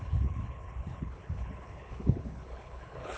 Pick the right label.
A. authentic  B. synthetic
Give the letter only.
B